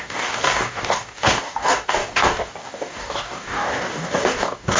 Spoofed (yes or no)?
yes